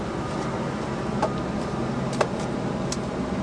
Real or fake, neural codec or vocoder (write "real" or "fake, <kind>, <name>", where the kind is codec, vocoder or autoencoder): real